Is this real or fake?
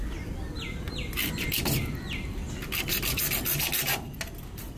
real